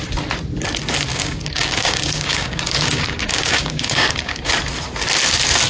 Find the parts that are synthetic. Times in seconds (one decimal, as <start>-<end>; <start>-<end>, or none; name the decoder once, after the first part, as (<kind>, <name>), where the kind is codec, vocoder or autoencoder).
1.1-4.5 (codec, DAC)